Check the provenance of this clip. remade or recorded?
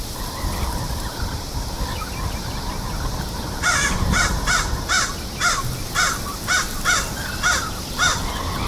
recorded